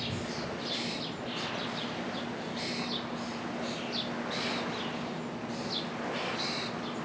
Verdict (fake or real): real